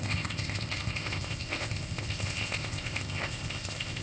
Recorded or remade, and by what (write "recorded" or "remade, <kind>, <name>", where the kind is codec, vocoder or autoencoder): remade, codec, ZipCodec